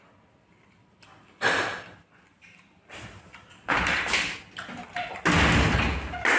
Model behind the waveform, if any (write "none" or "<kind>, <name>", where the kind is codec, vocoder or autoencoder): none